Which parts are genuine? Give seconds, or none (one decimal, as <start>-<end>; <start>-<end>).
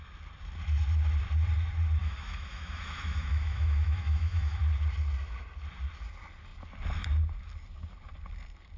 0.0-2.0; 4.6-8.8